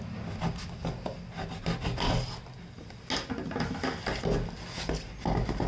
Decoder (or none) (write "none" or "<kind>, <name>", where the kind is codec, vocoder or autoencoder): none